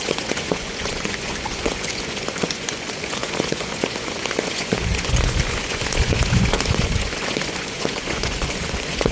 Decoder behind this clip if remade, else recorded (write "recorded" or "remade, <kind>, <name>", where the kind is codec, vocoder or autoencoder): remade, vocoder, Vocos